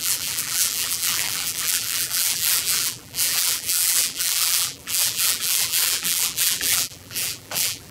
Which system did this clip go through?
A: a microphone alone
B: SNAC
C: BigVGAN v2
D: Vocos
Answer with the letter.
C